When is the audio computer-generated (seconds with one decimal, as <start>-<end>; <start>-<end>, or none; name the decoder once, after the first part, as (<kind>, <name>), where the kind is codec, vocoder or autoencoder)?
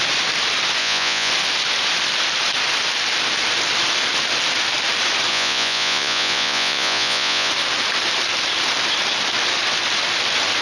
0.8-1.3 (vocoder, Vocos); 5.3-7.5